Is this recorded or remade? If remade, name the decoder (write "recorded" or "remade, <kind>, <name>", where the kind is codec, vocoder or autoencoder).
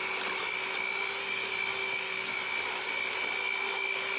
recorded